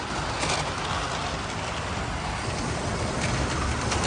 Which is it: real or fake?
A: real